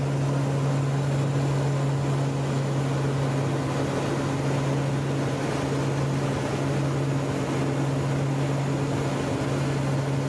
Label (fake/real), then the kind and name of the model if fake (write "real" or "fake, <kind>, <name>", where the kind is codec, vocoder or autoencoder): real